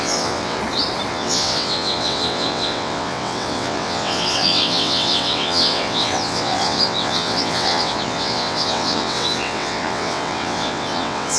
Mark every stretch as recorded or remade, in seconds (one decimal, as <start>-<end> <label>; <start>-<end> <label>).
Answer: 0.0-0.6 remade; 0.6-1.1 recorded; 1.1-11.4 remade

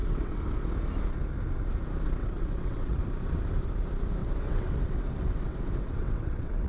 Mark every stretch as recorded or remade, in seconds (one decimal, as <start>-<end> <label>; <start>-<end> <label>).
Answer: 0.0-0.7 remade; 0.7-2.2 recorded; 2.2-3.0 remade; 3.0-4.2 recorded; 4.2-6.7 remade

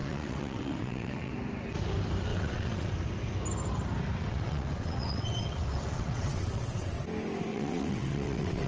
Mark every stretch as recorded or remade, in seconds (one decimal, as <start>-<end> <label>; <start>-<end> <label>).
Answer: 0.0-1.3 remade; 1.3-2.3 recorded; 2.3-2.9 remade; 2.9-4.2 recorded; 4.2-7.0 remade; 7.0-7.5 recorded; 7.5-8.7 remade

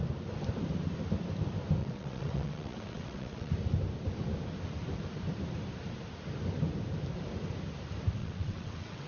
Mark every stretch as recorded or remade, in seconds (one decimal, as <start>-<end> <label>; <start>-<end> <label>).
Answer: 0.0-1.8 recorded; 1.8-3.5 remade; 3.5-8.2 recorded; 8.2-9.1 remade

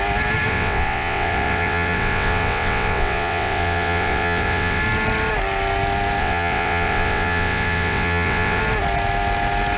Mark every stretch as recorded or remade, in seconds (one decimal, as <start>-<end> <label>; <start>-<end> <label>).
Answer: 0.0-0.5 recorded; 0.5-4.8 remade; 4.8-6.2 recorded; 6.2-8.6 remade; 8.6-9.8 recorded